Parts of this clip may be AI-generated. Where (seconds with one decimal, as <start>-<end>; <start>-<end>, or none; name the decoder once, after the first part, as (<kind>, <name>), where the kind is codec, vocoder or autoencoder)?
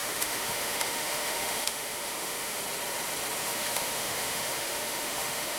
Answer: 0.0-2.6 (autoencoder, DAC-VAE); 3.4-5.6